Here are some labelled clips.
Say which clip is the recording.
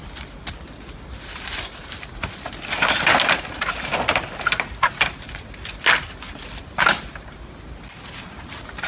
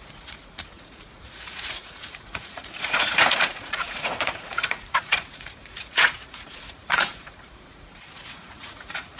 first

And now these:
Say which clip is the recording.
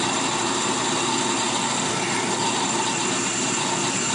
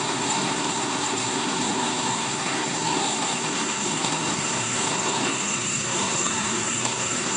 first